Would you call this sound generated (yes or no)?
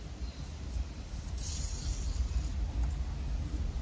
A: no